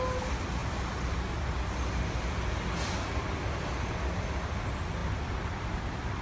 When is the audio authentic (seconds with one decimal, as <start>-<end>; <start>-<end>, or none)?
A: 0.0-6.2